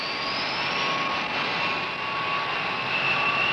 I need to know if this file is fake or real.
real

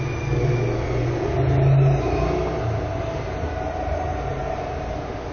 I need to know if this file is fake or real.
real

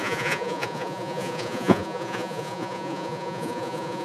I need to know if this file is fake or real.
fake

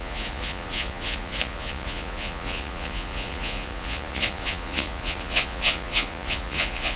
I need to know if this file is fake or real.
fake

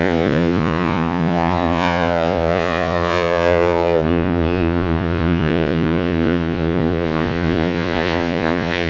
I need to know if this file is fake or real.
fake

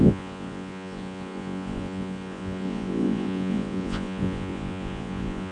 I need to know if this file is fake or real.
fake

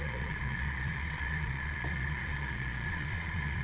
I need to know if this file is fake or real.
fake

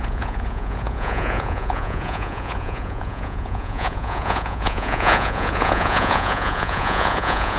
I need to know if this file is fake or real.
fake